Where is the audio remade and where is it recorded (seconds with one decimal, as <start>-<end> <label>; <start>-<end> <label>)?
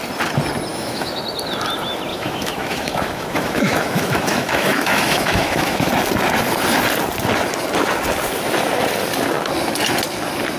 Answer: 0.0-0.7 recorded; 0.7-1.2 remade; 1.2-2.1 recorded; 2.1-5.9 remade; 5.9-10.6 recorded